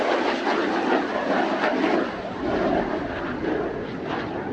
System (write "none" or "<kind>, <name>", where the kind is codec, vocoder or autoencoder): none